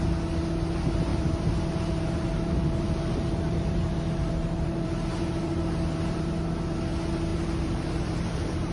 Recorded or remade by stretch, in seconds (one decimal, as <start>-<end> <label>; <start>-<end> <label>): 0.0-1.1 recorded; 1.1-6.3 remade; 6.3-7.3 recorded; 7.3-8.7 remade